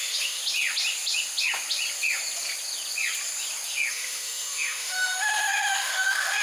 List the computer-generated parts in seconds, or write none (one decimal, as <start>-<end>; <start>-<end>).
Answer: 0.0-0.4; 3.9-6.4